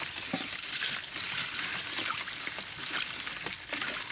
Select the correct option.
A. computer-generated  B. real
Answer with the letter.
B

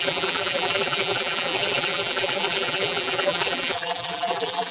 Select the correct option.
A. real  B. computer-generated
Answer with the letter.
B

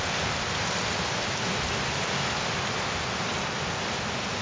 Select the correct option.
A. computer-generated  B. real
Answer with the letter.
B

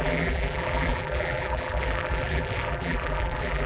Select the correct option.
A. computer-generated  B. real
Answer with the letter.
A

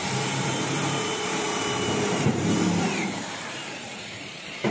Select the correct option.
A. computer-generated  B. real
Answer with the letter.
A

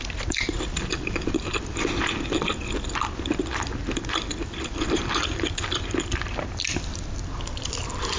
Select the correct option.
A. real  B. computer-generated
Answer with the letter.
B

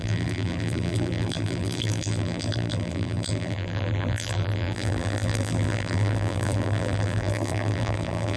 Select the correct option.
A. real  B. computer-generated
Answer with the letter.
B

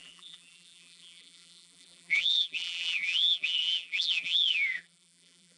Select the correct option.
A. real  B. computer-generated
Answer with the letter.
B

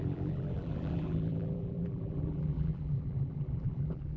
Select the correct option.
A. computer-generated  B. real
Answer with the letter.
A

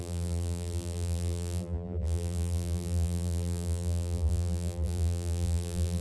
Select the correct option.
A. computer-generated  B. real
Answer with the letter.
A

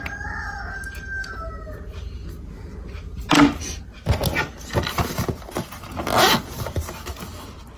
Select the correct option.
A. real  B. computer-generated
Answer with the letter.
A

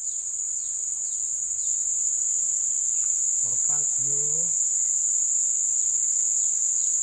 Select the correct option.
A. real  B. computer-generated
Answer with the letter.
A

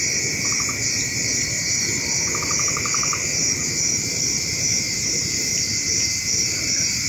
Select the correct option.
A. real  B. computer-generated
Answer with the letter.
B